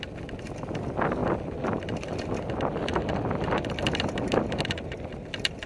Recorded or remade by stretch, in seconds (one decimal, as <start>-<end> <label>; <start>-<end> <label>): 0.0-5.7 recorded